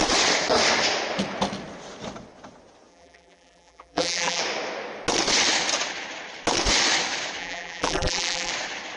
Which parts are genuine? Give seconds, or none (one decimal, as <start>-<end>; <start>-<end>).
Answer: 0.0-2.9; 4.4-7.4; 8.5-9.0

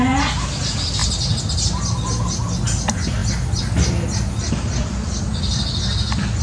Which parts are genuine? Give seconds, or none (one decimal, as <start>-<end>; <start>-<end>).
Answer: 0.0-6.4

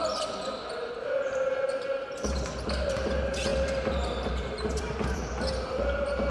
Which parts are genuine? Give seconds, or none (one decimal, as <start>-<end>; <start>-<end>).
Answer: none

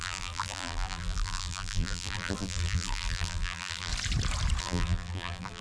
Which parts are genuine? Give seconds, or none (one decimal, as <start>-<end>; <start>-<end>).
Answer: 3.9-4.6

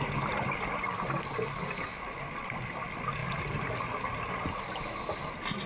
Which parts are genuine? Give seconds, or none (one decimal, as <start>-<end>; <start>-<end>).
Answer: 0.0-5.7

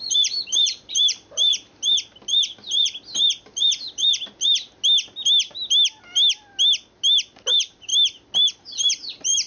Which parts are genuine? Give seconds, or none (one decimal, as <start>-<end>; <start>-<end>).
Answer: 1.5-3.4; 4.0-7.5; 7.9-8.5

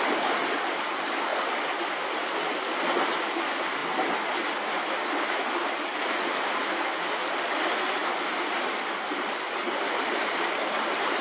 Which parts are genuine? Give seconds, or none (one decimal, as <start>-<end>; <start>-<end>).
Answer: 0.0-11.2

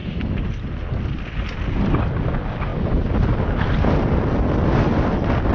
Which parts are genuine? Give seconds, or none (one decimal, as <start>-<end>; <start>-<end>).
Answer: 0.0-5.5